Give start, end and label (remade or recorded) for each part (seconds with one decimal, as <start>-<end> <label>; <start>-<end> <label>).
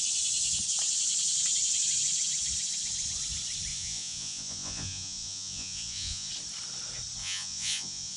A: 0.0-3.7 recorded; 3.7-6.3 remade; 6.3-7.2 recorded; 7.2-8.2 remade